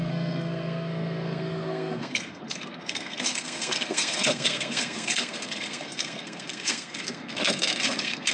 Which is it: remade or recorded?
remade